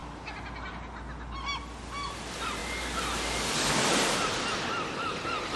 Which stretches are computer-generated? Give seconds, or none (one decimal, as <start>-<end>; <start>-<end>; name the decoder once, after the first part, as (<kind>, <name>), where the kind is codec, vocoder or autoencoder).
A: none